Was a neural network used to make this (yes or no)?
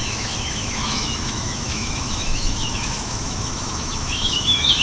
yes